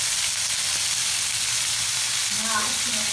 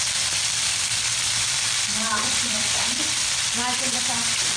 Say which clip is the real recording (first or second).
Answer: first